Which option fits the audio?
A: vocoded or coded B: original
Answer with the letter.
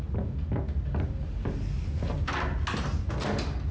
B